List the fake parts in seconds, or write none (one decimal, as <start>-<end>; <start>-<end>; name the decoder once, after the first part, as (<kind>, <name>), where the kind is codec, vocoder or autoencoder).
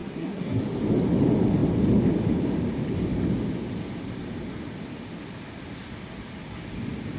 0.0-0.6 (codec, SNAC)